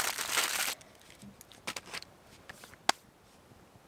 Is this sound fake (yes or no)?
no